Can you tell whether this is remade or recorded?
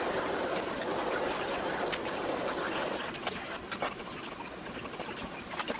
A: recorded